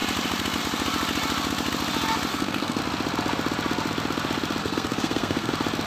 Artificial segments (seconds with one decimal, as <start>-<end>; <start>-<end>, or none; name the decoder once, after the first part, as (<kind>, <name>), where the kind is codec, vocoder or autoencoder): 2.3-2.8 (codec, SNAC); 4.6-5.5